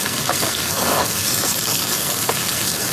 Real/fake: fake